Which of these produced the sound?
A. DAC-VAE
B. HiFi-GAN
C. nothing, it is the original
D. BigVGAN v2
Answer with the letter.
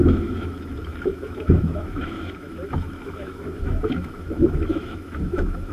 A